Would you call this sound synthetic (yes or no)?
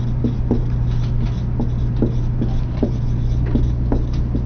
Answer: no